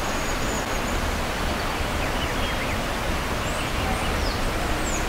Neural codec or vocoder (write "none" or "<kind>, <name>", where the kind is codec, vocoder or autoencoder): none